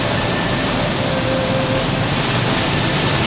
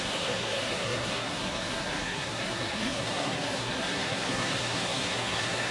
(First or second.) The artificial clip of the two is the second